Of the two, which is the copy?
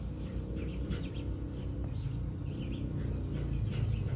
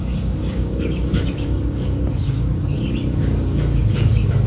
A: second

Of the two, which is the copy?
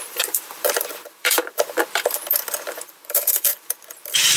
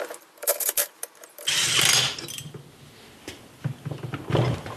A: first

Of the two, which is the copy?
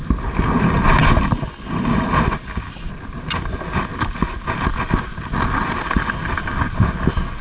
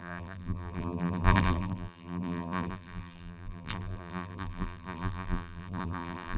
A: second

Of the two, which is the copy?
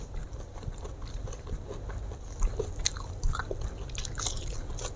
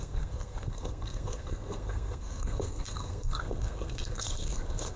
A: second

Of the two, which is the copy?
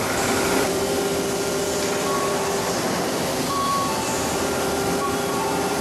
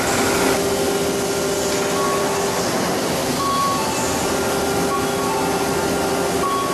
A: first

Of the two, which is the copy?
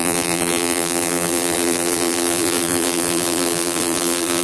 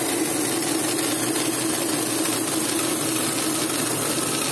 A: first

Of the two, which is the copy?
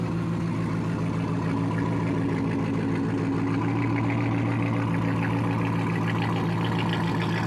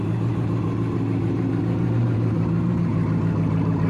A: second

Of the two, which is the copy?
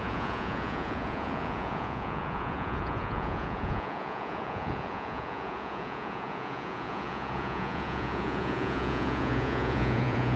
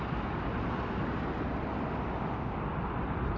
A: first